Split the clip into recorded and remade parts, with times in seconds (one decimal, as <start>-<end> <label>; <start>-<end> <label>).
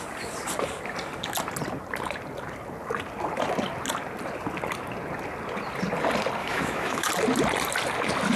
0.0-6.4 recorded; 6.4-7.1 remade; 7.1-8.4 recorded